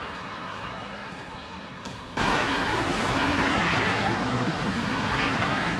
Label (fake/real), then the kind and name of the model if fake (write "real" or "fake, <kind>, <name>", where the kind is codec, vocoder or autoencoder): fake, codec, SNAC